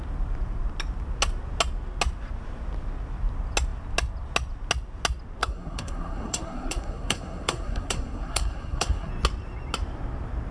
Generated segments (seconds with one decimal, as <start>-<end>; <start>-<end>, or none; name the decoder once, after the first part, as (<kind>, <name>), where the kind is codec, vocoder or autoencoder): 5.4-9.1 (codec, SNAC)